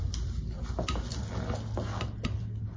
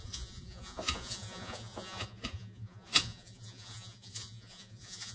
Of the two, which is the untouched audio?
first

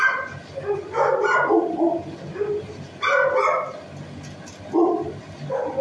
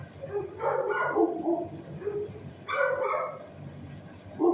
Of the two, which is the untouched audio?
first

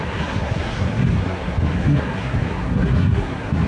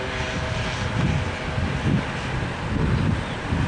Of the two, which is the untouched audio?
second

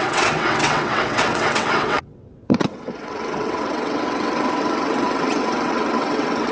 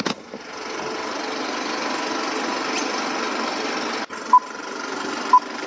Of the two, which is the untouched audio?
second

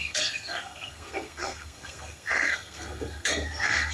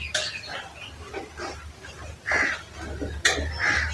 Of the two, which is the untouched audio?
second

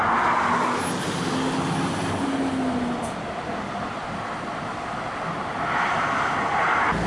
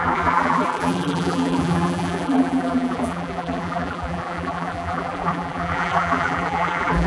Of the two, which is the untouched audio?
first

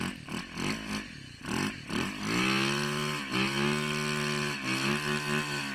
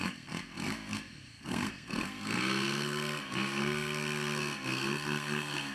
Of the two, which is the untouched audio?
first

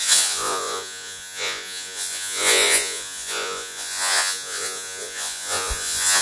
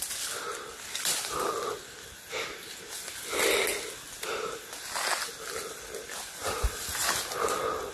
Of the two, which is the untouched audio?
second